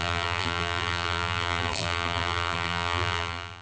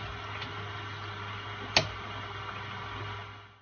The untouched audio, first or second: second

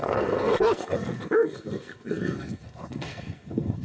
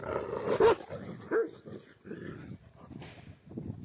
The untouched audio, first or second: second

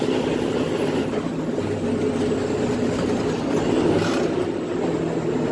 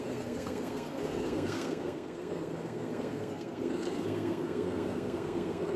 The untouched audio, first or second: first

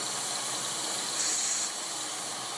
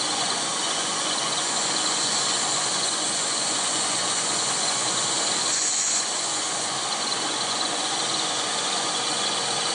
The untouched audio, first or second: first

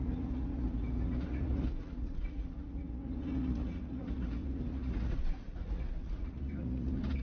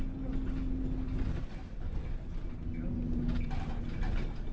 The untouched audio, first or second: second